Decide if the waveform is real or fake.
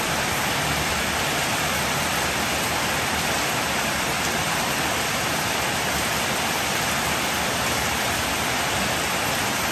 fake